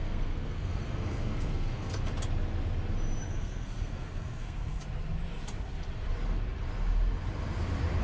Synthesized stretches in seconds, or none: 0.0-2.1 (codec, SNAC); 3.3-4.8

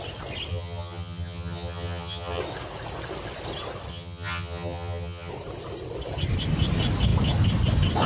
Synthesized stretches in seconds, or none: 0.5-2.4 (vocoder, HiFi-GAN); 3.9-5.3

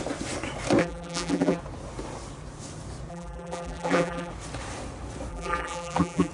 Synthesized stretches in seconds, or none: 0.8-1.6 (vocoder, BigVGAN v2); 3.1-4.3; 5.3-6.3

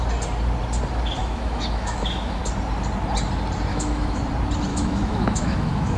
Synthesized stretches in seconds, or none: 1.2-2.4 (autoencoder, DAC-VAE); 3.7-4.2; 4.7-6.0

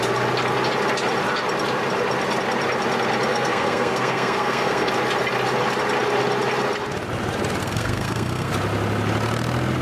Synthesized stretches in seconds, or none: 3.3-4.9 (codec, SNAC); 7.6-8.5

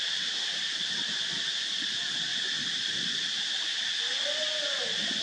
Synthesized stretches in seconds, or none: none

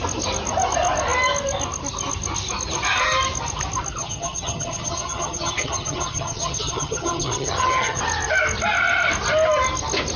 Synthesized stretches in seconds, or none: 4.0-8.0 (vocoder, HiFi-GAN)

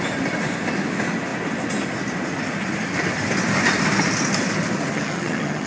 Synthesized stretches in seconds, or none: 4.9-5.7 (vocoder, HiFi-GAN)